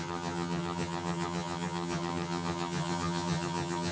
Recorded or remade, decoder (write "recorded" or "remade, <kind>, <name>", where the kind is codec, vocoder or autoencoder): remade, vocoder, HiFi-GAN